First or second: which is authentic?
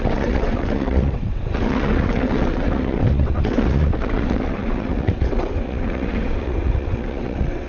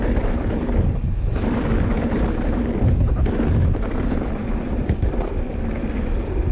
second